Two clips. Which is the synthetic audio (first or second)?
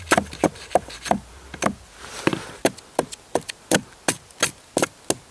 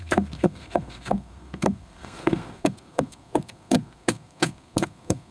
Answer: second